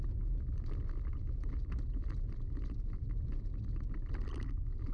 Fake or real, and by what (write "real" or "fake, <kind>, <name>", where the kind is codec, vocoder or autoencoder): real